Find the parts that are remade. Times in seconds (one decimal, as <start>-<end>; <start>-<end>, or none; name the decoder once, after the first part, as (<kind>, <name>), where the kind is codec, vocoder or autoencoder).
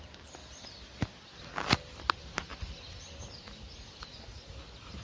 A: none